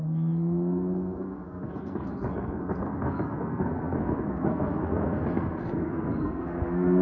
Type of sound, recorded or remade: remade